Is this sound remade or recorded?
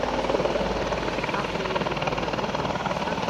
recorded